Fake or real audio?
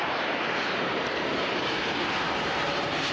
fake